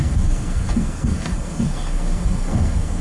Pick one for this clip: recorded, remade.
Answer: remade